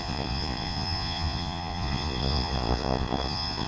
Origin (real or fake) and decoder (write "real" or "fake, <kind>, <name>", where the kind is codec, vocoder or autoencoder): fake, vocoder, Vocos